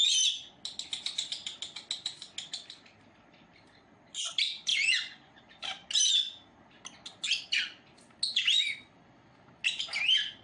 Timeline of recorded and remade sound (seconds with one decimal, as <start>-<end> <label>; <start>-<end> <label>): 0.0-4.7 recorded; 4.7-5.4 remade; 5.4-10.4 recorded